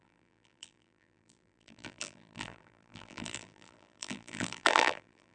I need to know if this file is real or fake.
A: fake